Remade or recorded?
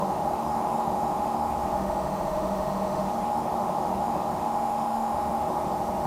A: remade